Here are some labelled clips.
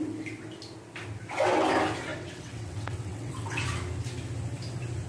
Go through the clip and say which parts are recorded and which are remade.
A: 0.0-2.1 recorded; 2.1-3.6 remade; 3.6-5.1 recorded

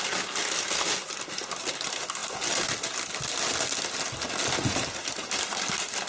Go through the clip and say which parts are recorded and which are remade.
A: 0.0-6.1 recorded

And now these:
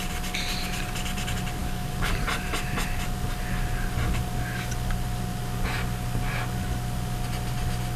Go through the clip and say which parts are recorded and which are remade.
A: 0.0-1.6 recorded; 1.6-2.1 remade; 2.1-8.0 recorded

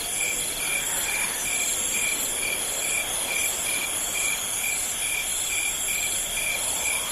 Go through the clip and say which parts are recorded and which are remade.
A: 0.0-5.3 recorded; 5.3-7.1 remade